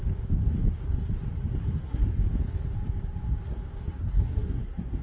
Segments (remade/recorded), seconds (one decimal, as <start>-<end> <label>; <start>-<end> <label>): 0.0-1.6 recorded; 1.6-2.2 remade; 2.2-3.8 recorded; 3.8-5.0 remade